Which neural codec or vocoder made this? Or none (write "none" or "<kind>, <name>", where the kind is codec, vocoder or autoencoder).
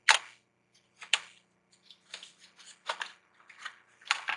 none